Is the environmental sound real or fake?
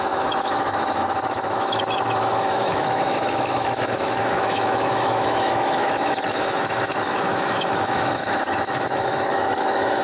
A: fake